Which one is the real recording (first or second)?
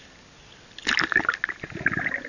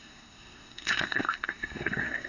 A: first